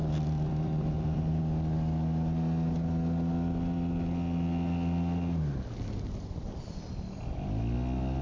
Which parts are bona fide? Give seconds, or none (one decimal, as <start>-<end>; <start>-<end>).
1.4-8.2